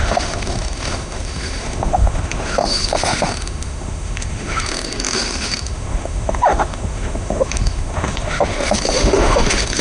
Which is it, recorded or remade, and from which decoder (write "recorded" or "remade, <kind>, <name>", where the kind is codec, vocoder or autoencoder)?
remade, autoencoder, DAC-VAE